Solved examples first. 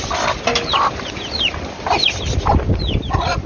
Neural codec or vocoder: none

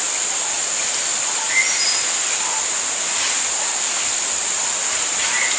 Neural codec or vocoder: none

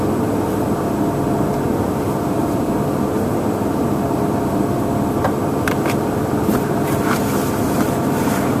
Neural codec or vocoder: vocoder, BigVGAN v2